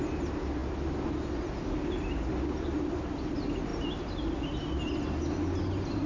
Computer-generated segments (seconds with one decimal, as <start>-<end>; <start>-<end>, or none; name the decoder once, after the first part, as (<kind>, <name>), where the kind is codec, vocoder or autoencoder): none